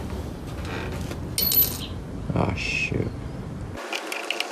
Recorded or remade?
recorded